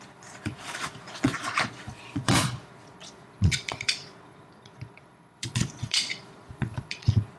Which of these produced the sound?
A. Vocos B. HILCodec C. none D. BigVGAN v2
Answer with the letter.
A